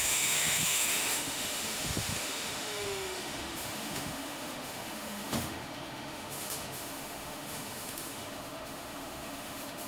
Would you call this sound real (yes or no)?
no